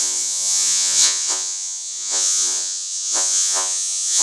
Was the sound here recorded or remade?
remade